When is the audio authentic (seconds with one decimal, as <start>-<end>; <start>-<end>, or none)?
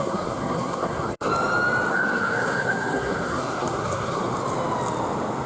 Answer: 1.3-1.9; 4.2-5.5